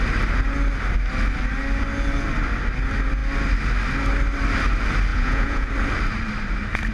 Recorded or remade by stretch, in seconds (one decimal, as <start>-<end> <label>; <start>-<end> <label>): 0.0-5.1 recorded; 5.1-5.7 remade; 5.7-6.9 recorded